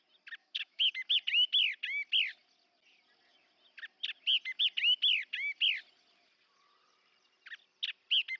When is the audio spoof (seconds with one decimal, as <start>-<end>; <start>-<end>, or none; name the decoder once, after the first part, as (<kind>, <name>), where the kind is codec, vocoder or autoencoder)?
0.4-0.9 (autoencoder, DAC-VAE)